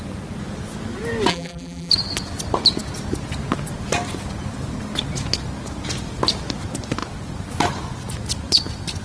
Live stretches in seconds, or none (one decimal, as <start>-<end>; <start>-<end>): 0.0-1.3; 1.9-9.0